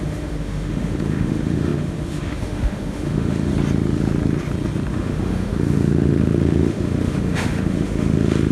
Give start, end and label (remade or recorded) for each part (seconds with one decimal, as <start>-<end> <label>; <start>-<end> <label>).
0.0-3.5 remade; 3.5-4.9 recorded; 4.9-8.5 remade